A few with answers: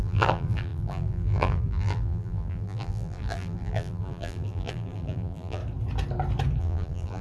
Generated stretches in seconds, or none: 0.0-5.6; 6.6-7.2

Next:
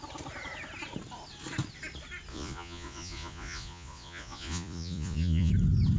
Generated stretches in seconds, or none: 2.3-5.5

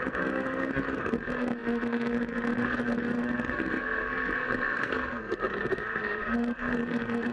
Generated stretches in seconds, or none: 0.0-7.3

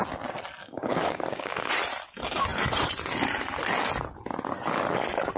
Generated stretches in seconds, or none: 0.6-1.7

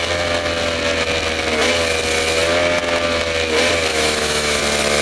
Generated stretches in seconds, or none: 3.9-4.6

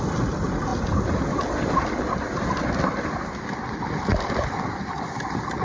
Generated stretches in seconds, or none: none

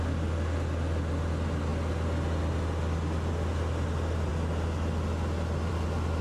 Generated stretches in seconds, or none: none